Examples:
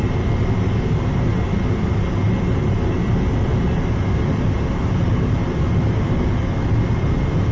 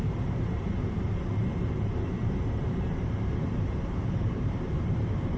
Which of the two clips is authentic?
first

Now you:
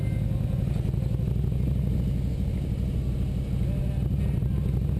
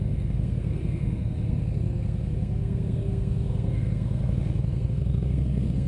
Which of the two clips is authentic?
first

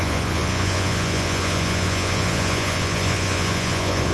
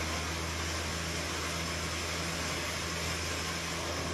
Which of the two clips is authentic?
second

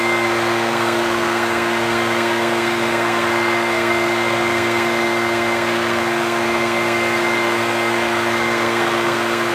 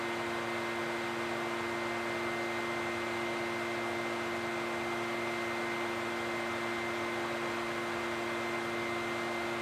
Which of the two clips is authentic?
second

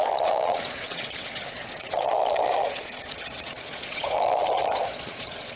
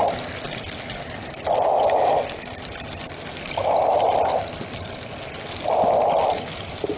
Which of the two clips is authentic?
second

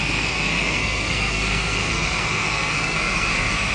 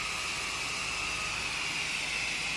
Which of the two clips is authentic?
second